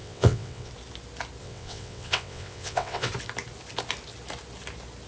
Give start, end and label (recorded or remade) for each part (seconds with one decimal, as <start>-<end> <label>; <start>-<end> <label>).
0.0-0.7 remade; 0.7-1.4 recorded; 1.4-3.1 remade; 3.1-5.1 recorded